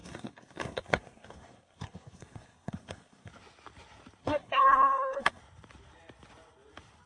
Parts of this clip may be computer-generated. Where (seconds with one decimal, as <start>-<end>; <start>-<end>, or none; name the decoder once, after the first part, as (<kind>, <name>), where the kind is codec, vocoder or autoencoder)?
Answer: 0.0-3.3 (codec, SNAC); 4.2-5.4